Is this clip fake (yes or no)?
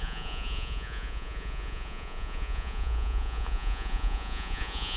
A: yes